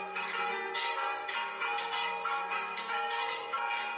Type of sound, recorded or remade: remade